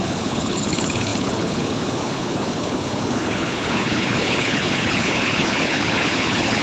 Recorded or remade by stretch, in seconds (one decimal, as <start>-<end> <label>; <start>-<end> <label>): 0.0-6.6 remade